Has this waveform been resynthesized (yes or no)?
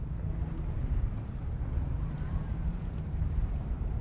yes